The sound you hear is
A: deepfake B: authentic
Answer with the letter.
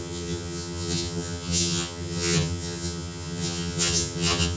A